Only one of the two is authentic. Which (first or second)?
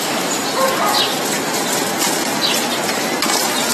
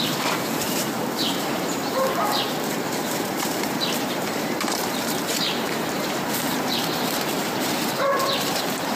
first